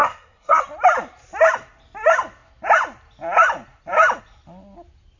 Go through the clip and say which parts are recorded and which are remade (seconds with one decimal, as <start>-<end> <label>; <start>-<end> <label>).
0.0-0.6 remade; 0.6-5.2 recorded